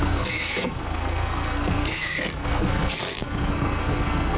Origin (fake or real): fake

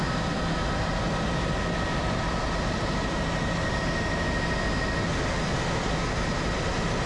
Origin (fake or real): real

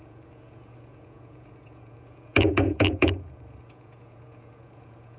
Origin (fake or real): fake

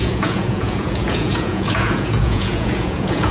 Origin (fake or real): fake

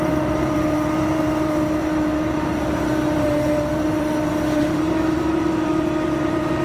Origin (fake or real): fake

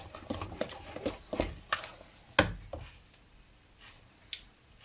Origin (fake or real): real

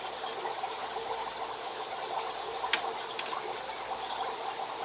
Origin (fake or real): real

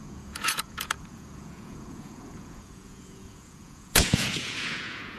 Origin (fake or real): fake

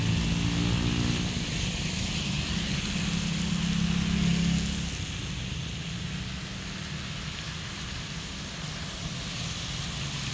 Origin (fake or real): real